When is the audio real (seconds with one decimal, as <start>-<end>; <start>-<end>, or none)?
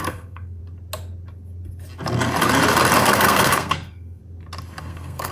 0.6-3.0; 4.2-4.8